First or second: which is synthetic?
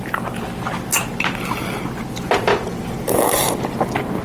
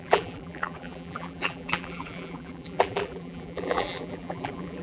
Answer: second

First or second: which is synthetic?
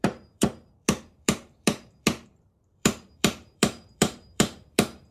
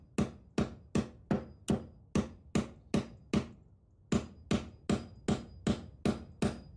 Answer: first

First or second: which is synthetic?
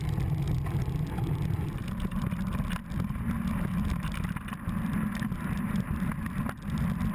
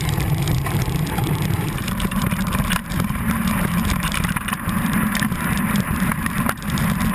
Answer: second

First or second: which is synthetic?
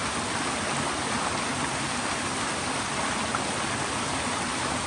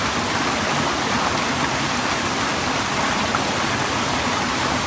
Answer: second